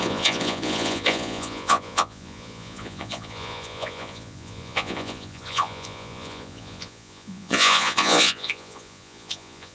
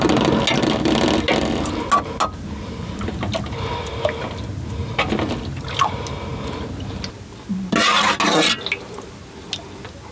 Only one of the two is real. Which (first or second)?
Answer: second